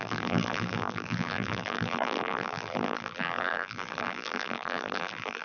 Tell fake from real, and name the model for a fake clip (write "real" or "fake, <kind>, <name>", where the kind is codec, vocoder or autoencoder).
fake, vocoder, BigVGAN v2